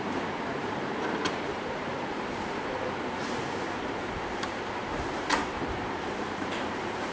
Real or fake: fake